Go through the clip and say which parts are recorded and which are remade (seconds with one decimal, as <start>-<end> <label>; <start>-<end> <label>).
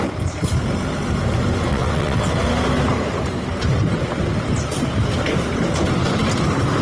0.0-1.7 recorded; 1.7-2.3 remade; 2.3-6.8 recorded